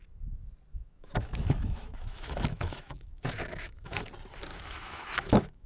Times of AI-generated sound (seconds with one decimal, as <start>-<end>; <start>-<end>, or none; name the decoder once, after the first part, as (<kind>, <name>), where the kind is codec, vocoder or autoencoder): 0.7-4.1 (autoencoder, DAC-VAE); 4.5-5.7